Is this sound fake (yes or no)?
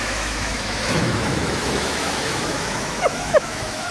yes